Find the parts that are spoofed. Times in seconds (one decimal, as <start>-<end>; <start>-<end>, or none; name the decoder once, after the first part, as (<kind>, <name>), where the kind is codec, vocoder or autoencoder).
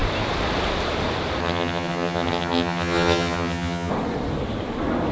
1.4-3.9 (vocoder, HiFi-GAN)